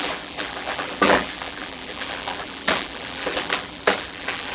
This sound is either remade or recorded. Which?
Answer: remade